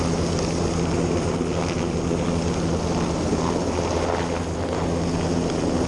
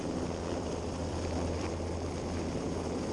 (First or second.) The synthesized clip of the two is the second